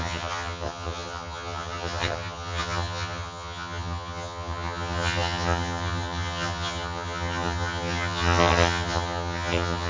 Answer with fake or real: fake